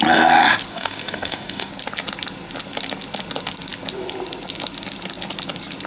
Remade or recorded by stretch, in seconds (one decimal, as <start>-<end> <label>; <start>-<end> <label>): 0.0-0.7 recorded; 0.7-1.7 remade; 1.7-5.9 recorded